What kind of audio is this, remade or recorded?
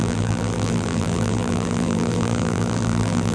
remade